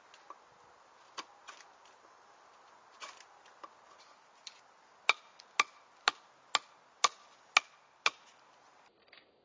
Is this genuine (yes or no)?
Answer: yes